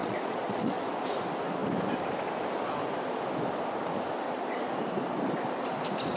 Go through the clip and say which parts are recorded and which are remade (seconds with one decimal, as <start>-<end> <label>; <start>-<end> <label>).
0.0-0.8 remade; 0.8-6.2 recorded